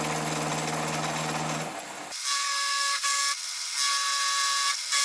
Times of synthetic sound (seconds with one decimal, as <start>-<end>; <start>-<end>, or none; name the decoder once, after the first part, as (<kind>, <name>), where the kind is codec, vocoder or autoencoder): 2.4-3.2 (codec, SNAC)